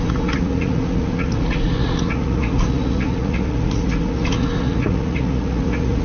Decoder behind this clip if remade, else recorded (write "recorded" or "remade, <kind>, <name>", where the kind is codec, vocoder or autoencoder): remade, vocoder, Vocos